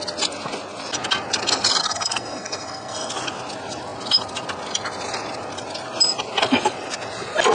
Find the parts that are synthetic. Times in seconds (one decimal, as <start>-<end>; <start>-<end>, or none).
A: 1.8-3.1